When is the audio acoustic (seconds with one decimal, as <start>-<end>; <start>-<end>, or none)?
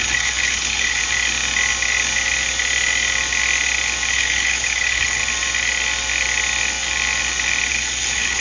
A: 1.0-4.1; 5.2-7.7